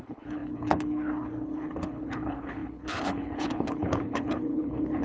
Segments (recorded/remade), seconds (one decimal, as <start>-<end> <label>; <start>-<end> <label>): 0.0-5.0 remade